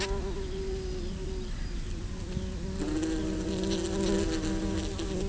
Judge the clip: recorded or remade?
recorded